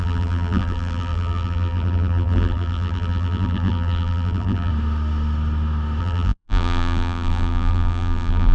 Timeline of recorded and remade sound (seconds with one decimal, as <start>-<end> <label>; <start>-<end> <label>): 0.0-4.7 remade; 4.7-6.0 recorded; 6.0-8.5 remade